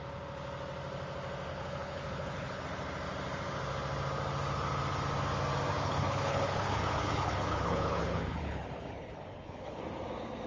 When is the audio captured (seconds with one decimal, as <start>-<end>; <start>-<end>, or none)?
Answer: 0.0-1.5; 2.6-5.7; 9.8-10.5